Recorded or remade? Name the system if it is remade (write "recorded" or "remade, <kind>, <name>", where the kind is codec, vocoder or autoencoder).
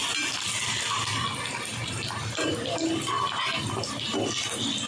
recorded